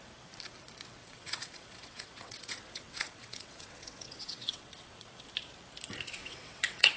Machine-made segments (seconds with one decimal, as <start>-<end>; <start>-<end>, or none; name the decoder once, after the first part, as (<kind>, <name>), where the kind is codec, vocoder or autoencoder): 1.0-5.2 (vocoder, WaveNeXt); 6.2-7.0